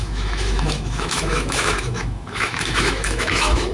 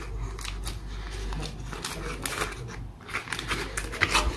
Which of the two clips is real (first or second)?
second